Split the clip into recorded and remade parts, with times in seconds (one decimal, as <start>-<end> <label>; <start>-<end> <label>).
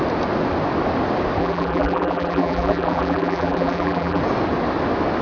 0.0-1.4 recorded; 1.4-4.2 remade; 4.2-5.2 recorded